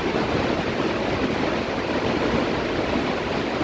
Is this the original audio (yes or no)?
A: yes